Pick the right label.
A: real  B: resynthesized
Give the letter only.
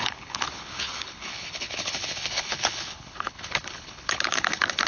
B